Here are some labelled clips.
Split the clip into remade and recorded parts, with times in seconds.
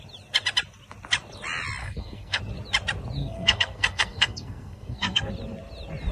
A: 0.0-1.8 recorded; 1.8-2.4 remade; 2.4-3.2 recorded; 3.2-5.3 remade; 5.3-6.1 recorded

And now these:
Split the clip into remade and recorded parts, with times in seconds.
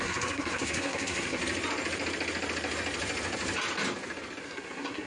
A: 0.0-1.4 remade; 1.4-4.4 recorded; 4.4-5.1 remade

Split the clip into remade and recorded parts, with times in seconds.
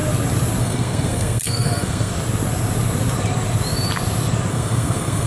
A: 0.0-0.6 recorded; 0.6-2.1 remade; 2.1-4.5 recorded; 4.5-5.3 remade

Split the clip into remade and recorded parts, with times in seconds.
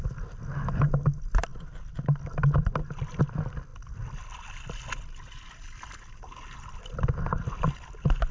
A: 0.0-8.3 recorded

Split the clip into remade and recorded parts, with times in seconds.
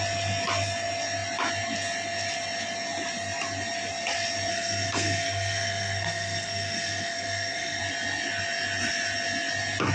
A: 0.0-4.5 recorded; 4.5-7.8 remade; 7.8-9.9 recorded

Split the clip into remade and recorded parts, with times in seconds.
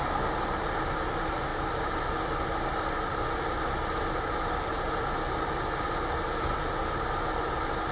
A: 0.0-7.9 recorded